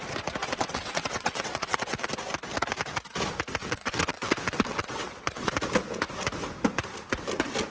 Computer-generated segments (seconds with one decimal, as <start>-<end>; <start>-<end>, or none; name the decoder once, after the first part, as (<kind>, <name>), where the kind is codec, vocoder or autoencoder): 0.4-2.1 (vocoder, WaveNeXt); 3.6-5.5